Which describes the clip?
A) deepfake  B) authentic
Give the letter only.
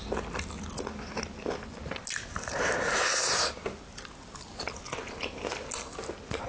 B